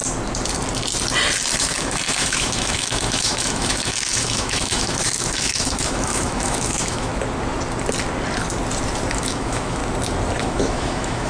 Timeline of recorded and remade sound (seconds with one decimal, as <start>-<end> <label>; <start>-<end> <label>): 0.0-1.6 recorded; 1.6-7.1 remade; 7.1-9.1 recorded; 9.1-9.8 remade; 9.8-10.4 recorded; 10.4-11.3 remade